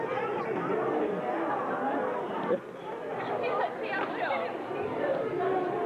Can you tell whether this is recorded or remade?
recorded